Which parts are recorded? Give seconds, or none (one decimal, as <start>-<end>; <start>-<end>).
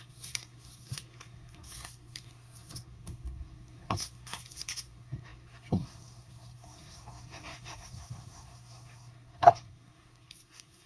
none